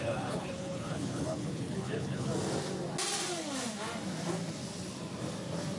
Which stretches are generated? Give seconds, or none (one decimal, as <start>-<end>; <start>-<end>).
0.0-2.3